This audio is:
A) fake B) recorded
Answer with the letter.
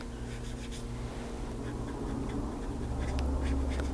B